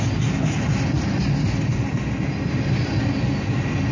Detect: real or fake real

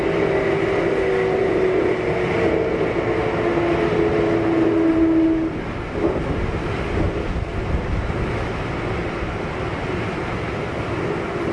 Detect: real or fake real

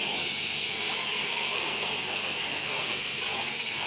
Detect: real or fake fake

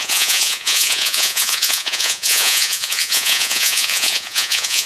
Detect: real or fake fake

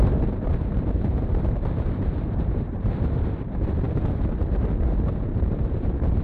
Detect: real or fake fake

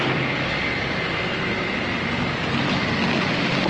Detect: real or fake real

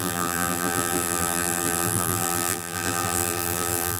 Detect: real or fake fake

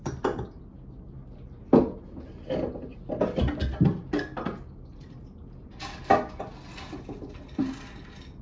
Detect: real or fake real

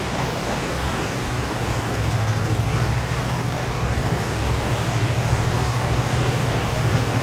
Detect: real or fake fake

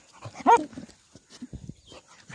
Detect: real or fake real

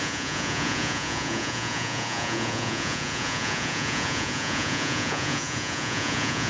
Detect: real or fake fake